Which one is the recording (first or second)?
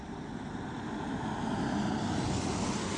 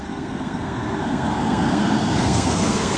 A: first